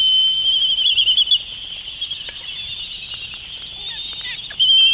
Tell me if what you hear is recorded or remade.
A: recorded